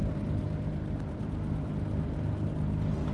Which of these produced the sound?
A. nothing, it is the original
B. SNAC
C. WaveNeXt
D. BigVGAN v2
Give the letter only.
A